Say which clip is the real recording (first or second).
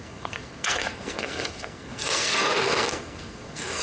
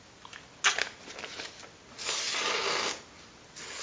second